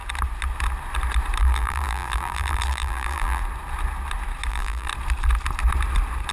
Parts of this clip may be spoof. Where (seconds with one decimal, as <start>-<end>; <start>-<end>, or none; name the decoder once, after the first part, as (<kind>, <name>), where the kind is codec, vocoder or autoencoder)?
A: 1.4-3.4 (vocoder, BigVGAN v2); 4.5-4.9

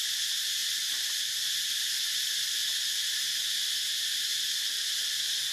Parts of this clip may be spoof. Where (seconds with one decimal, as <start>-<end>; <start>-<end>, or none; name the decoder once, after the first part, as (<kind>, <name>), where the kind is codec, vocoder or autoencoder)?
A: none